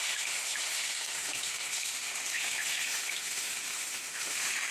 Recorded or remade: remade